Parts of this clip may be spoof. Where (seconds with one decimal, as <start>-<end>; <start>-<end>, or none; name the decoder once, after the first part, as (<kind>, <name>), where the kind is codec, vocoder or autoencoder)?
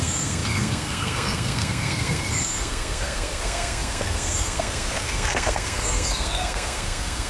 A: 0.0-7.3 (codec, SNAC)